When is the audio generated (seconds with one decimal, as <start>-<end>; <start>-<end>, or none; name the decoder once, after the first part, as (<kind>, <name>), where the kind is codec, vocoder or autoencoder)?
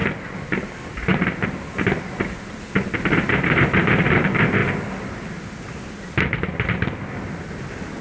none